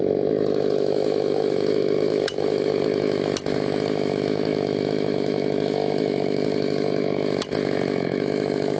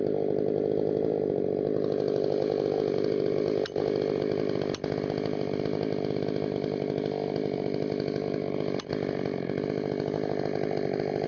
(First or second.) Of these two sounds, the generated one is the first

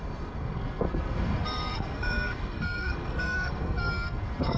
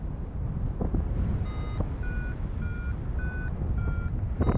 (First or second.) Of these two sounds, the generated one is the first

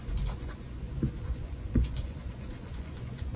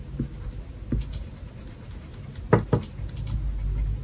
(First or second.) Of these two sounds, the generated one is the first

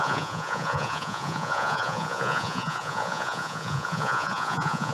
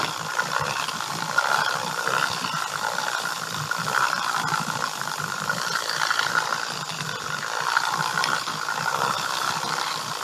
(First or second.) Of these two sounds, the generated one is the first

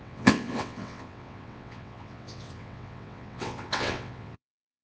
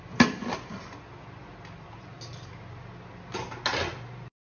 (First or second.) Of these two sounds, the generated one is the first